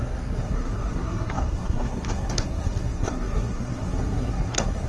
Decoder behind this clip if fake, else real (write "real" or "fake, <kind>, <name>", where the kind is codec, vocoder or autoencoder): fake, codec, SNAC